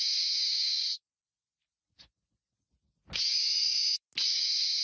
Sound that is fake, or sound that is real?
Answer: real